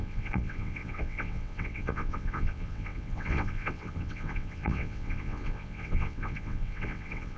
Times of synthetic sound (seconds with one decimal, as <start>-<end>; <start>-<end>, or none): 0.0-7.4